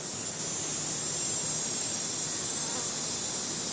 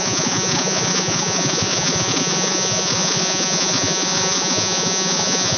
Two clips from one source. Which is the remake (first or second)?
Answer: second